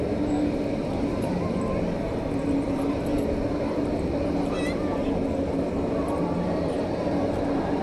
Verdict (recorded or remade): remade